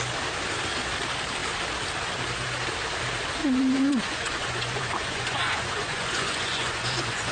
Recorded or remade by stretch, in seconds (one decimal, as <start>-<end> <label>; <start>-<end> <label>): 0.0-3.4 recorded; 3.4-7.3 remade